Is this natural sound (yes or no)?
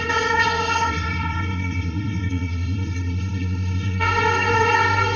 no